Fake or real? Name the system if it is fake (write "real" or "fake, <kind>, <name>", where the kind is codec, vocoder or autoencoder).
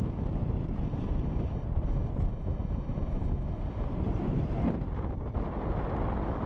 real